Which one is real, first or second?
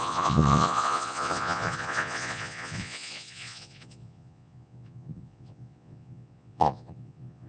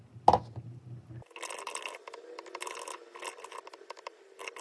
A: second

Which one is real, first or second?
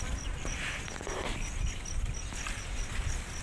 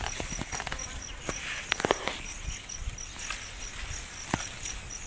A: second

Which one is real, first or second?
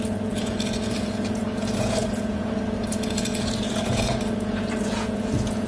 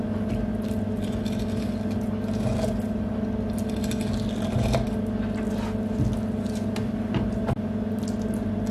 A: second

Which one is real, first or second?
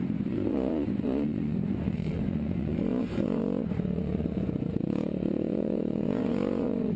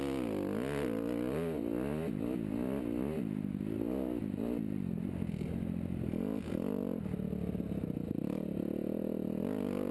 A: second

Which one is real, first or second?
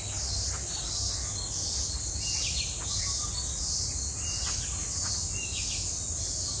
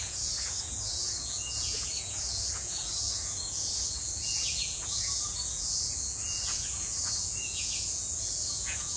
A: first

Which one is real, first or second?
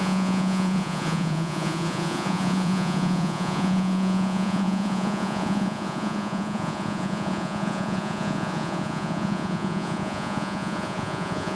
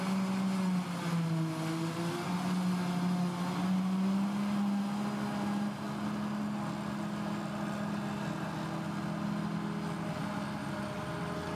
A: second